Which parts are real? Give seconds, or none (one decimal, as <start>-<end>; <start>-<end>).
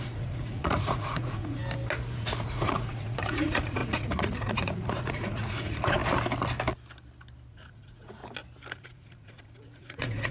1.6-2.2; 6.0-7.5; 8.2-8.7